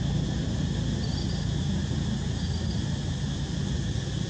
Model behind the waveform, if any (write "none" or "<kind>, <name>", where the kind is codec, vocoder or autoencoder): none